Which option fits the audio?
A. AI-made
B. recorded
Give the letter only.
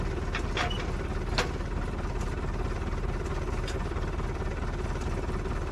B